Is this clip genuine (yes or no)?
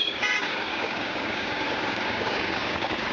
no